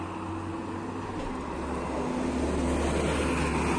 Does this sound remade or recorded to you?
recorded